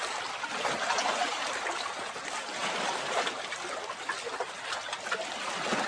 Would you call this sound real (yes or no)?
yes